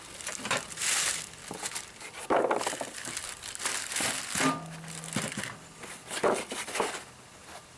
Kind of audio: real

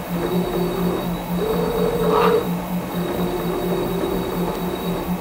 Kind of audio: real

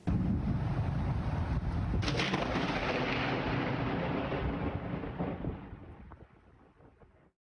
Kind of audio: real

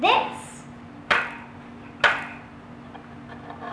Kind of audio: real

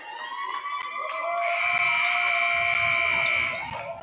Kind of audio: real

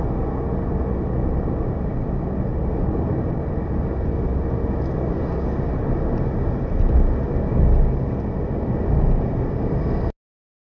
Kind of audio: real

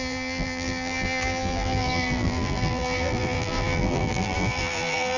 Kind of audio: fake